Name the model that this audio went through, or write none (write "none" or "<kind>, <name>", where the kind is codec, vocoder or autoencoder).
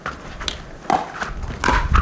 none